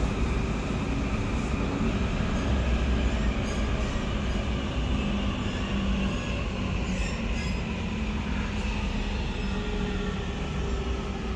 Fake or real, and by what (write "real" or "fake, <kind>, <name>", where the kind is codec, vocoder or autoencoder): real